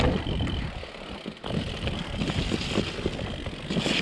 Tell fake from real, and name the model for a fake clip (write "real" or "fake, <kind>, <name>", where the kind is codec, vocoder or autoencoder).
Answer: real